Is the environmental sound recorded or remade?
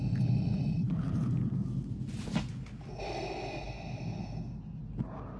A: recorded